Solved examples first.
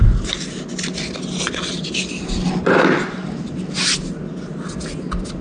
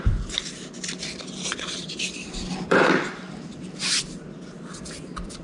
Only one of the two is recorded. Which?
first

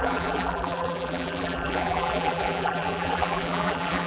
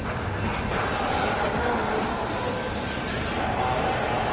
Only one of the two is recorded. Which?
second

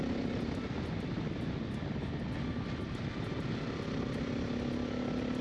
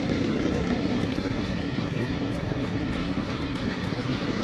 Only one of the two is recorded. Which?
first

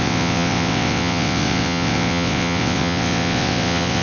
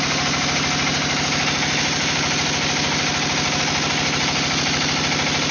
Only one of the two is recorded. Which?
second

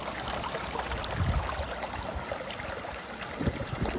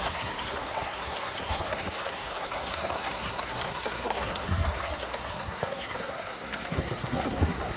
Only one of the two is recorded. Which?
first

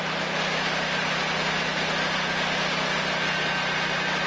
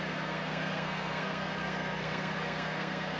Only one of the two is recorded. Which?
first